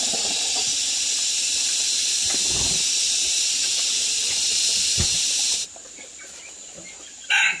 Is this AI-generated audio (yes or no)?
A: no